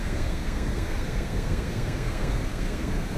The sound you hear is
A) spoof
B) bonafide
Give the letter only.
A